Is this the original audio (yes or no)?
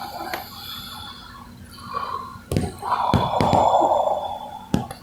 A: yes